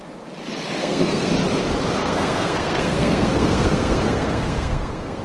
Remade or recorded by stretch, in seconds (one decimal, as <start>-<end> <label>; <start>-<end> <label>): 0.0-0.8 recorded; 0.8-1.3 remade; 1.3-2.0 recorded; 2.0-5.2 remade